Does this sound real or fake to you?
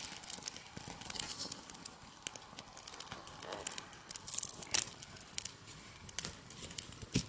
real